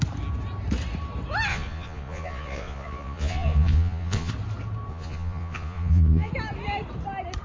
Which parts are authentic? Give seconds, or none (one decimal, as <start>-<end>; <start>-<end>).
0.0-1.5; 4.3-4.9; 6.3-7.4

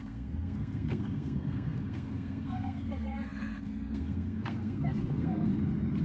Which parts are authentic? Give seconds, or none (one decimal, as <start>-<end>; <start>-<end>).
5.5-6.0

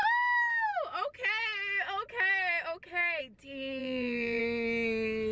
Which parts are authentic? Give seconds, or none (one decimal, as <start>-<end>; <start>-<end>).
0.0-3.8; 4.4-5.3